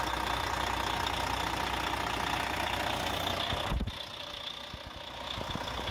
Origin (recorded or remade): recorded